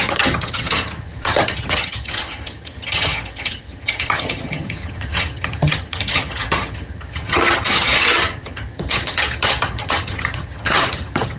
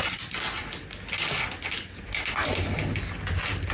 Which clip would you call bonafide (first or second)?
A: second